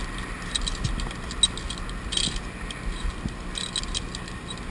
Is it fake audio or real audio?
real